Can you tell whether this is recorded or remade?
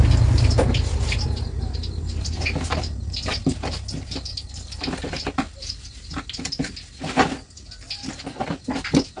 recorded